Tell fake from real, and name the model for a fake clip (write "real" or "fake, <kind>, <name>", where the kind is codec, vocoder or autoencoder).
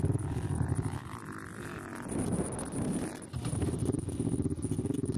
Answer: real